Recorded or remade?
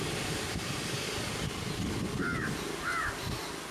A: recorded